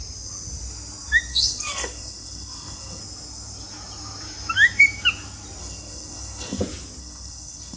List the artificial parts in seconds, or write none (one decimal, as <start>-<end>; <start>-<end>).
1.3-3.0; 5.6-6.6; 7.0-7.8